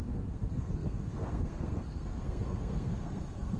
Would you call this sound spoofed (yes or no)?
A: yes